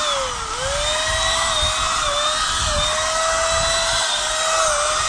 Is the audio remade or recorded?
recorded